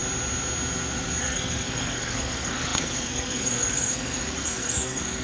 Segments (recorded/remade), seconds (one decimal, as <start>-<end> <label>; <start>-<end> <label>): 0.0-1.2 recorded; 1.2-5.2 remade